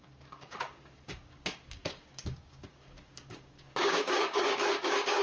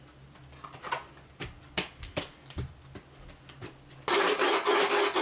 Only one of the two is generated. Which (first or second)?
first